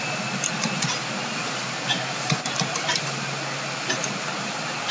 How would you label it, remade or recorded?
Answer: recorded